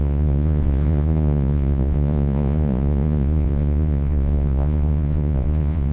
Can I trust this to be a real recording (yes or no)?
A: no